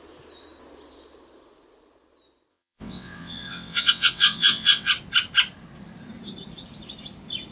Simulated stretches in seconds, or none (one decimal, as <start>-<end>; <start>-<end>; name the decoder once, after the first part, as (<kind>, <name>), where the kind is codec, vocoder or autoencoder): 2.5-4.9 (vocoder, WaveNeXt)